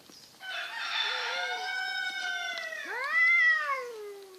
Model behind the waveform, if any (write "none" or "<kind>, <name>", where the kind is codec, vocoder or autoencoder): none